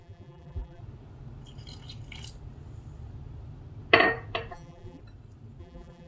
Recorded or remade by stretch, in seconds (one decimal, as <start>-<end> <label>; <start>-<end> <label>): 0.0-0.8 remade; 0.8-4.5 recorded; 4.5-5.0 remade; 5.0-5.6 recorded; 5.6-6.1 remade